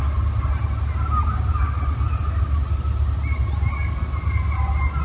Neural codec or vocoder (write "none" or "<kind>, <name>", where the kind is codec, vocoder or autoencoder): none